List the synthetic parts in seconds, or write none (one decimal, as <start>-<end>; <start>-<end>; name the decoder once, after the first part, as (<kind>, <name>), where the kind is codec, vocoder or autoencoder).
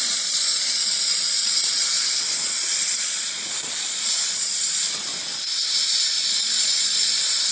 0.0-5.1 (vocoder, Vocos); 6.1-7.5